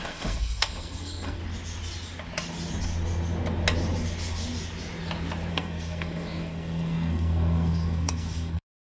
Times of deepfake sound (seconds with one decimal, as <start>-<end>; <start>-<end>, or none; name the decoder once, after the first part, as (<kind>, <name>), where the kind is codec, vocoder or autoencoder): 0.0-1.4 (codec, SNAC); 5.5-8.8